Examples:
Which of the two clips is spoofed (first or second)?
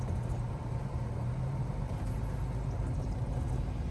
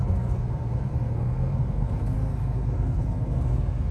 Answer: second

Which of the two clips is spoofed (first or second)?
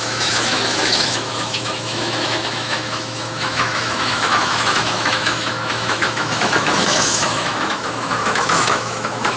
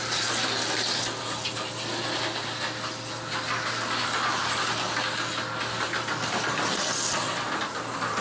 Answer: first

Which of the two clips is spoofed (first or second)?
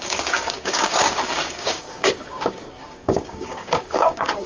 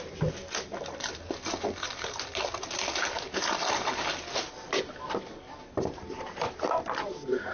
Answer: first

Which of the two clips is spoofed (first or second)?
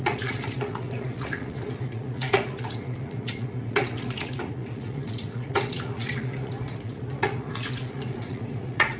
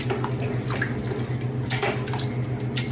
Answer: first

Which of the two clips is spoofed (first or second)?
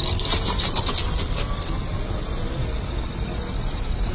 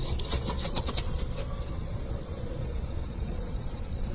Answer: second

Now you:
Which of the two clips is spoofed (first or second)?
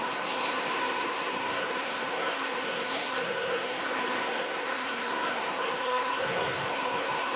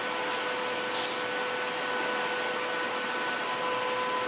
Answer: first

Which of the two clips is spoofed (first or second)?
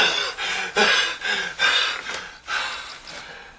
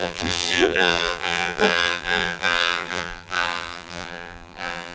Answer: second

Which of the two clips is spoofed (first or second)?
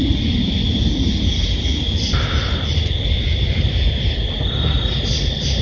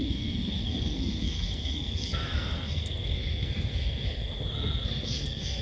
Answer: second